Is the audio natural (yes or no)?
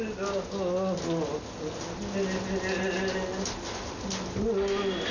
yes